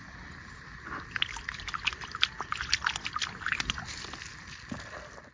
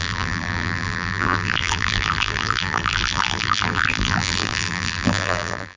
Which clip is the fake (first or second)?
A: second